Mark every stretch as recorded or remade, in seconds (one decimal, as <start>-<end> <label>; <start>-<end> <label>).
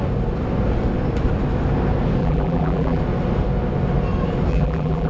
0.0-2.2 recorded; 2.2-3.0 remade; 3.0-4.5 recorded; 4.5-5.1 remade